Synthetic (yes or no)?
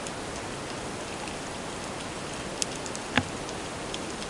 no